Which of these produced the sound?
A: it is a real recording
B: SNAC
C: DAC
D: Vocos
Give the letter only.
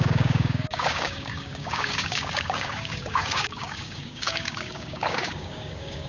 C